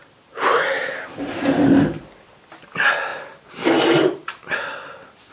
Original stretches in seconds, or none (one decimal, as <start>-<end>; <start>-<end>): 0.0-0.7; 2.4-3.1